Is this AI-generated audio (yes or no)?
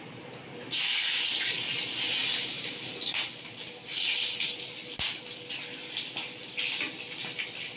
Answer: no